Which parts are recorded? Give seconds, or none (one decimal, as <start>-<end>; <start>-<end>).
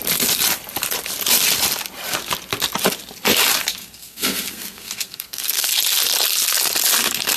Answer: 0.0-3.8; 5.7-7.4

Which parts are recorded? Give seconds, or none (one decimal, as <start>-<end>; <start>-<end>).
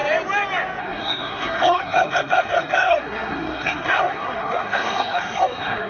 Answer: 0.0-0.8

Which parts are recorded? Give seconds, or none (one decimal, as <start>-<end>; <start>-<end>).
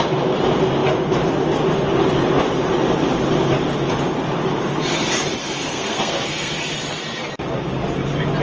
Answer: 0.0-5.4; 6.5-8.4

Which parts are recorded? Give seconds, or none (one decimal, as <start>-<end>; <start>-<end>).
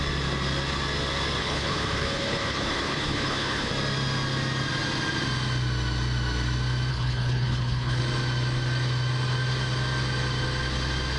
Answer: 0.0-1.4; 3.7-6.9; 8.0-11.2